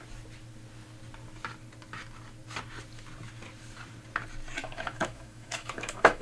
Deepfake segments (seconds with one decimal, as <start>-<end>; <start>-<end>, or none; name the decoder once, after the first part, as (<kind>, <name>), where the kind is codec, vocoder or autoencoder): 4.6-6.2 (autoencoder, DAC-VAE)